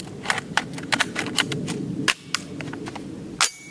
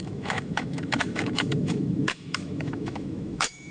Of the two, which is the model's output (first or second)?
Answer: second